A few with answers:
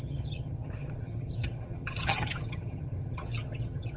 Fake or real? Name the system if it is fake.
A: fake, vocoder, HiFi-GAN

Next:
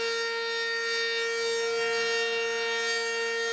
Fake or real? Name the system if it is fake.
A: real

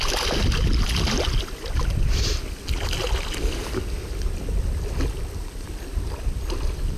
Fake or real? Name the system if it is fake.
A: real